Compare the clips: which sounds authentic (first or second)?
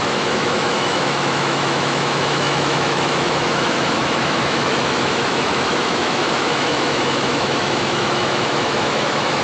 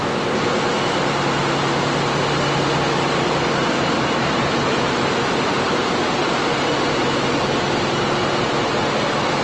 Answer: second